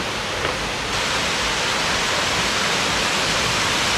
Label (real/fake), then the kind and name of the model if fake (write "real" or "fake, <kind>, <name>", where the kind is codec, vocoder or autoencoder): real